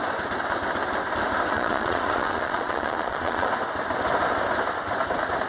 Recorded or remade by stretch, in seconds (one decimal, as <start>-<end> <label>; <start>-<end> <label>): 0.0-1.5 recorded; 1.5-3.5 remade; 3.5-5.5 recorded